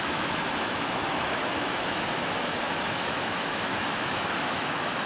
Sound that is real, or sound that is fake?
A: fake